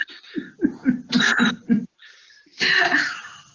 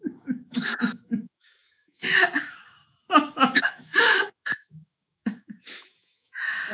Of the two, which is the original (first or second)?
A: first